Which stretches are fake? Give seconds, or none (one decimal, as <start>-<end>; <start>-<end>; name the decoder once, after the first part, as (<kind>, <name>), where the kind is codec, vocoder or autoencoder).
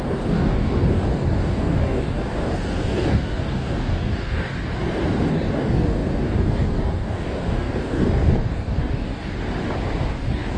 0.0-4.7 (codec, DAC); 5.3-9.4; 10.1-10.6